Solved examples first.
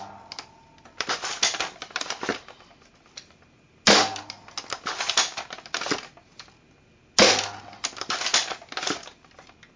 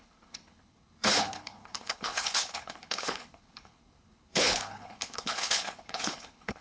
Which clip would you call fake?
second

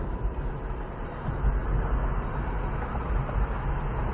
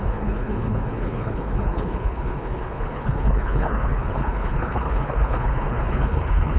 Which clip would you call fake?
second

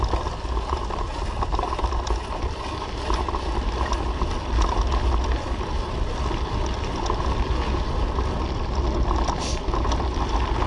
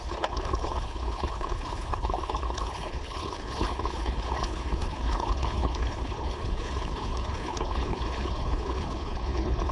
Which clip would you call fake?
second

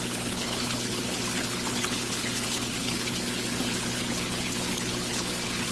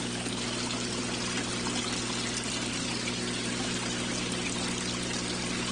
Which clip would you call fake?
first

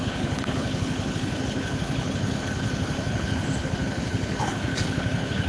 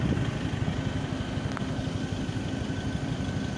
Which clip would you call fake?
first